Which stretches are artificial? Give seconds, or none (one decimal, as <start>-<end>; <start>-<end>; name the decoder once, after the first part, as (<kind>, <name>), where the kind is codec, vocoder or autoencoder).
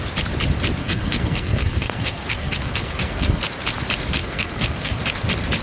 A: 0.8-3.4 (codec, SNAC); 4.2-5.0